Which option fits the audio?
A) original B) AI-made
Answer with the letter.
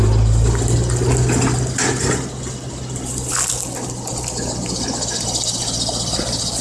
A